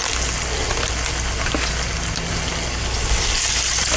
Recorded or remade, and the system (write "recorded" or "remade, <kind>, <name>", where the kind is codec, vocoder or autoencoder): recorded